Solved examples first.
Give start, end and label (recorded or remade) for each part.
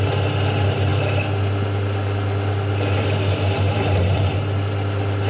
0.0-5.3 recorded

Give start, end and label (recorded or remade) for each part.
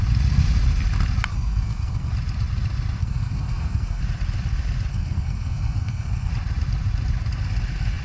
0.0-1.3 recorded; 1.3-2.1 remade; 2.1-3.0 recorded; 3.0-4.0 remade; 4.0-4.9 recorded; 4.9-6.3 remade; 6.3-8.0 recorded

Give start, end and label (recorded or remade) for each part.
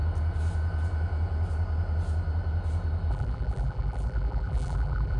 0.0-3.1 recorded; 3.1-5.2 remade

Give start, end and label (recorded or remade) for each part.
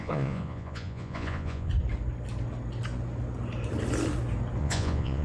0.0-1.7 remade; 1.7-4.6 recorded; 4.6-5.2 remade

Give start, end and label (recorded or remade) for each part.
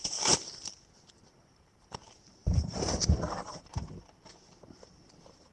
0.0-5.5 remade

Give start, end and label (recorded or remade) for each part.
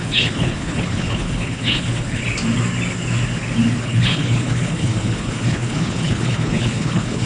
0.0-2.2 remade; 2.2-3.8 recorded; 3.8-7.3 remade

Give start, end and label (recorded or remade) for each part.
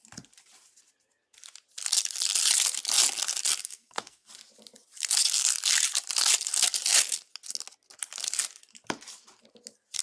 0.0-3.6 recorded; 3.6-4.3 remade; 4.3-10.0 recorded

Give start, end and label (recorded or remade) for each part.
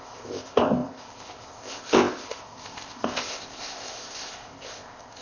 0.0-5.2 remade